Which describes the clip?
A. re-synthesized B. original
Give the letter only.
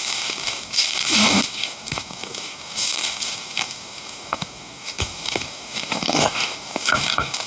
A